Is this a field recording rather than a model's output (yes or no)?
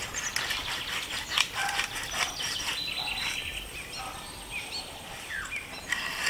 yes